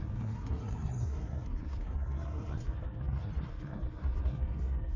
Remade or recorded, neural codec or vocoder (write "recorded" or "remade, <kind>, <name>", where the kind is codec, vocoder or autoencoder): remade, codec, SNAC